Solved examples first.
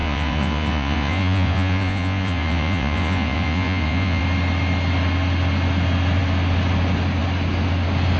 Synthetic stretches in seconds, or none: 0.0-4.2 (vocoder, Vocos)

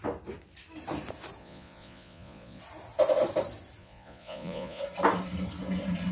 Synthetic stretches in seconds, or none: 1.4-2.6 (vocoder, Vocos); 3.8-4.8

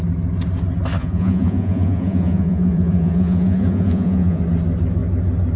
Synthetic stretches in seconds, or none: 1.0-4.4 (vocoder, Vocos)

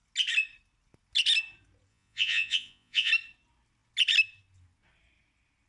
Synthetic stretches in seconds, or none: 1.9-3.1 (vocoder, Vocos)

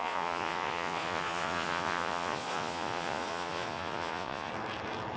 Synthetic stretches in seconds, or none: 0.0-4.5 (vocoder, Vocos)

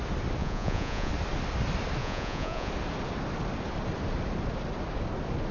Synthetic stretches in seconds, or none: 0.4-1.1 (vocoder, Vocos); 2.0-2.7

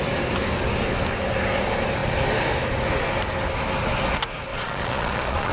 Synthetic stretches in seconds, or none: 4.5-5.5 (vocoder, Vocos)

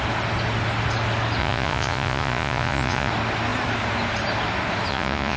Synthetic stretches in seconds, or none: 1.4-3.1 (vocoder, Vocos); 4.9-5.4